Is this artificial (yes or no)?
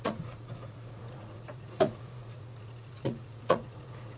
yes